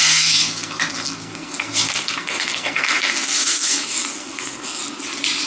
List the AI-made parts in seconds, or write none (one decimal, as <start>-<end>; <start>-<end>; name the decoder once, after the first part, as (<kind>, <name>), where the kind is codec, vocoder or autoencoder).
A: 0.0-4.8 (codec, SNAC)